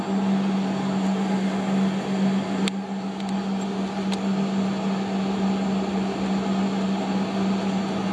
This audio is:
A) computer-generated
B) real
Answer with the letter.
B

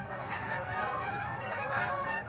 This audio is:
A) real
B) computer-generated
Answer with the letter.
B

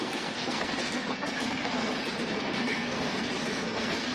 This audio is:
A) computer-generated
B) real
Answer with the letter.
A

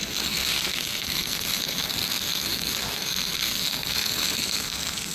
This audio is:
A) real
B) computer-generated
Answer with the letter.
B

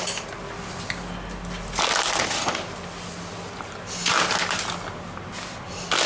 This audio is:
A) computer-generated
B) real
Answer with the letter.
B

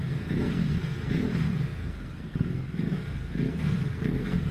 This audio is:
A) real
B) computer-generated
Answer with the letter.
B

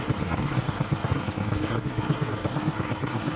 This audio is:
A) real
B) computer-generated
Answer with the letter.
B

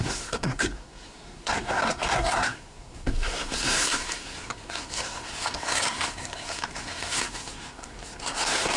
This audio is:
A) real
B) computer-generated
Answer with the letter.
B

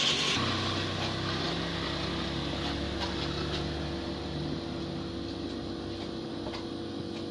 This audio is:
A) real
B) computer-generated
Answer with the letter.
A